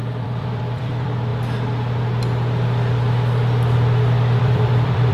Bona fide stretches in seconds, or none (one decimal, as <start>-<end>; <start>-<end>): 1.3-4.4